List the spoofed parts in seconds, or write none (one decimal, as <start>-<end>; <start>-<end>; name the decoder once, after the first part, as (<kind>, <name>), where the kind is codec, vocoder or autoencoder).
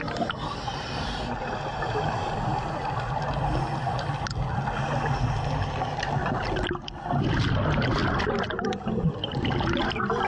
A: none